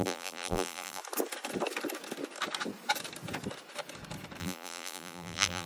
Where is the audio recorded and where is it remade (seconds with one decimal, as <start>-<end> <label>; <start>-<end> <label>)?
0.0-1.0 remade; 1.0-4.4 recorded; 4.4-5.7 remade